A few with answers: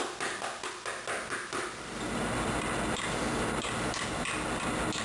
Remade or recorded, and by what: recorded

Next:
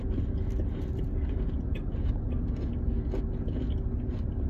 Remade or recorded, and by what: recorded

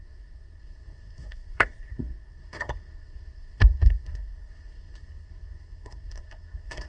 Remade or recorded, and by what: remade, codec, SNAC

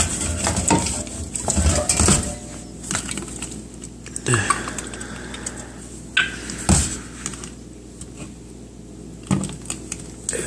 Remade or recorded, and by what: recorded